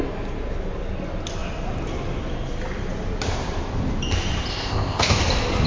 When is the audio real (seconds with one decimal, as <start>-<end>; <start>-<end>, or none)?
0.0-4.5; 5.2-5.7